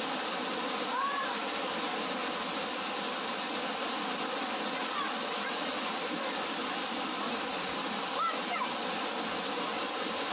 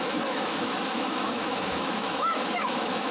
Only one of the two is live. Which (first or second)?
first